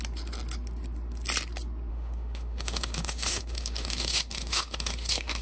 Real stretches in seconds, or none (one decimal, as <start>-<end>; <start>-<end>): 0.0-1.9